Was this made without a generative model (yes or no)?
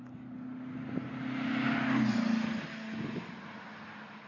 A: yes